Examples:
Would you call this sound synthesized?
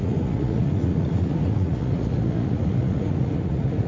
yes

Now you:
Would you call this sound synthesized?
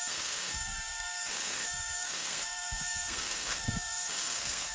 yes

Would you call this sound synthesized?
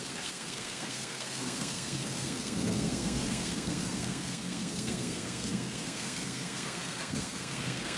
yes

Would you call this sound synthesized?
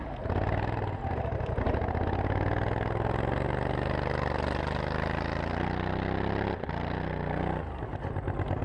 no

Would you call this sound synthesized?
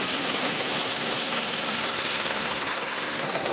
yes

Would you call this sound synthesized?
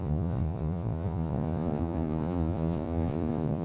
yes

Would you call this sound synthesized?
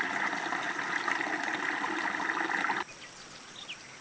no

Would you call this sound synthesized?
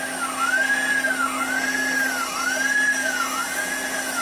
no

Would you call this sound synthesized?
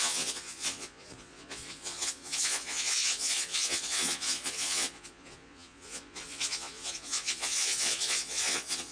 yes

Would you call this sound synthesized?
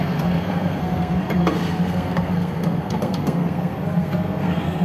yes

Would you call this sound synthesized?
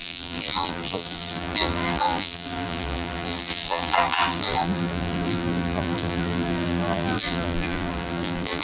yes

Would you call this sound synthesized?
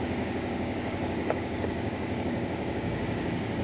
yes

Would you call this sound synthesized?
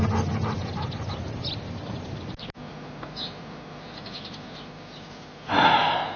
no